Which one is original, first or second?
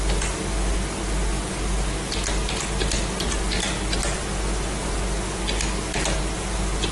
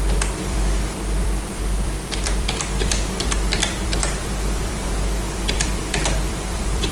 first